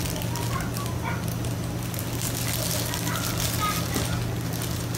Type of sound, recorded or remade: recorded